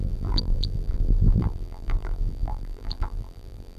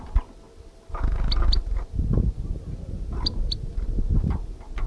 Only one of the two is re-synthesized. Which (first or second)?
first